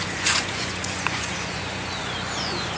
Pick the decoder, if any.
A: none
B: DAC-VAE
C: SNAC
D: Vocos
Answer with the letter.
D